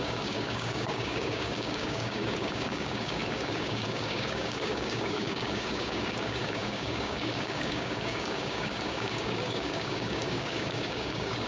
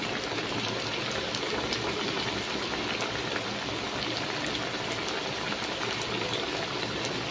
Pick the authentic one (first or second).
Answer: second